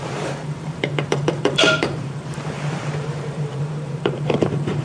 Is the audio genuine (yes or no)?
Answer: no